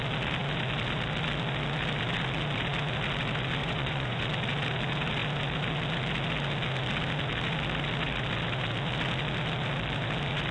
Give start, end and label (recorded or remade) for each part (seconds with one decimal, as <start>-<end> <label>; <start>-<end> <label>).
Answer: 0.0-3.6 recorded; 3.6-4.2 remade; 4.2-10.5 recorded